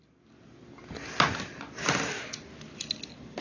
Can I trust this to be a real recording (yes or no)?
yes